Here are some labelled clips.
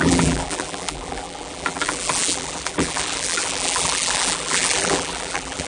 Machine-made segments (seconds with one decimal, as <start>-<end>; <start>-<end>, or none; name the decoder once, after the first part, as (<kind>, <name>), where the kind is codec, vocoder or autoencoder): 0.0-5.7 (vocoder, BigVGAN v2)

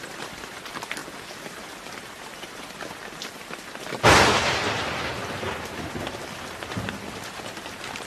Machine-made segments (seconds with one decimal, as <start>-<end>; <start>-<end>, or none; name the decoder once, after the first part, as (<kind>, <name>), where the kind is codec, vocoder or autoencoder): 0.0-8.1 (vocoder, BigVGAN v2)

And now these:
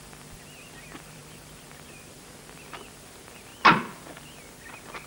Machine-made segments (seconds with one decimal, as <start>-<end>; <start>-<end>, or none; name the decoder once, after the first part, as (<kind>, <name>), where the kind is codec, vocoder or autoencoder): 0.0-3.5 (vocoder, BigVGAN v2)